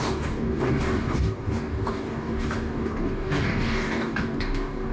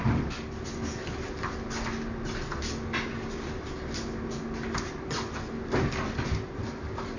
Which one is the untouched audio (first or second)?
second